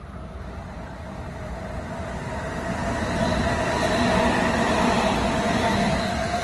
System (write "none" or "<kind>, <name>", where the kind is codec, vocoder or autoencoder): none